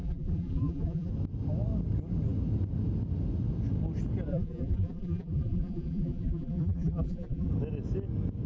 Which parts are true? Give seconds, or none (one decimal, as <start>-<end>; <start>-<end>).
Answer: 1.1-4.3; 7.5-8.5